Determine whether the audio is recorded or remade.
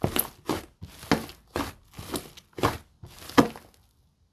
recorded